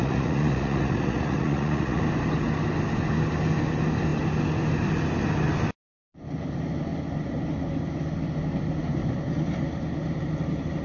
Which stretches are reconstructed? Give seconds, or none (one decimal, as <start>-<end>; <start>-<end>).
0.0-2.0